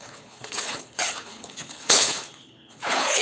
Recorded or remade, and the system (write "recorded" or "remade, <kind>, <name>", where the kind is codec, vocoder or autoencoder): remade, codec, HILCodec